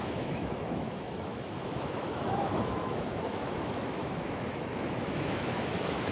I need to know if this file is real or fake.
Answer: fake